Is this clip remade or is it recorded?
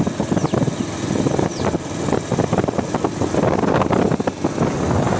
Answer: recorded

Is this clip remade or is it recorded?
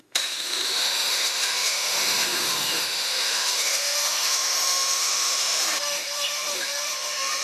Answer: remade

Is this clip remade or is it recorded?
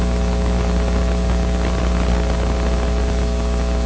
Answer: recorded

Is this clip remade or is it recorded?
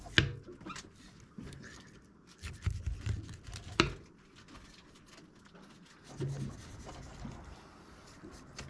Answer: recorded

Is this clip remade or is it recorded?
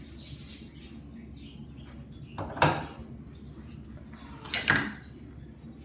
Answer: recorded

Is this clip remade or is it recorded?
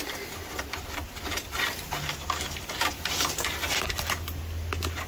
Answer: recorded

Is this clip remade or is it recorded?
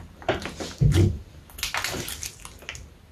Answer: recorded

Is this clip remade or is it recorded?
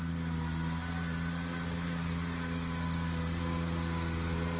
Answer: recorded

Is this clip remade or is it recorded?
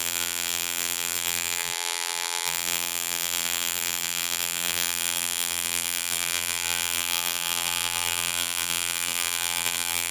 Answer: remade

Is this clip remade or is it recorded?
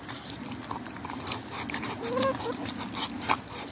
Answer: recorded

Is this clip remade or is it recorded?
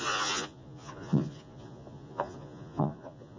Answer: remade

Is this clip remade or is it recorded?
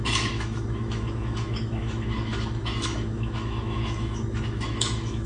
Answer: remade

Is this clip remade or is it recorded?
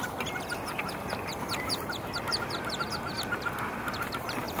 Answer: recorded